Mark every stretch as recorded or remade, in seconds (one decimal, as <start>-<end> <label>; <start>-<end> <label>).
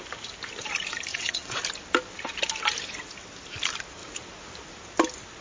0.0-1.1 recorded; 1.1-1.6 remade; 1.6-5.4 recorded